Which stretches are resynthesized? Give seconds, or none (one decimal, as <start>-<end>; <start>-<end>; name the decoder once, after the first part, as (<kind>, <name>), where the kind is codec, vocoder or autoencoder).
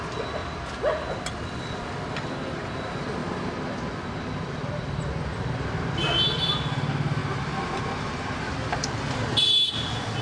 0.4-2.7 (vocoder, BigVGAN v2)